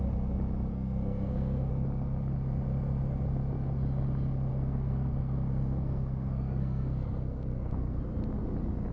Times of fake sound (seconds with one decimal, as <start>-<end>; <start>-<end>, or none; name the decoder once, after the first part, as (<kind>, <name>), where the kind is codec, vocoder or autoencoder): 0.7-1.7 (codec, SNAC); 4.5-8.0